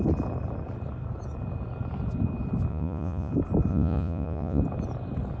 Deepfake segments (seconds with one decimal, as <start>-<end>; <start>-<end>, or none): 2.7-3.3; 3.7-4.6